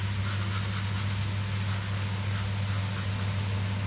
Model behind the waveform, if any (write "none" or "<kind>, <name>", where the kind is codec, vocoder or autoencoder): none